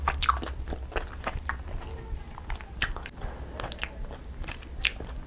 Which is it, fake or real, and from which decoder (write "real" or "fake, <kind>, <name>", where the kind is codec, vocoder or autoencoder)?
real